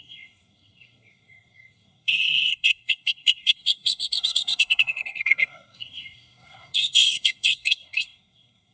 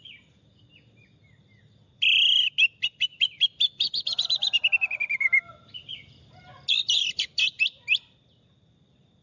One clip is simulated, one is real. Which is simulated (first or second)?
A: first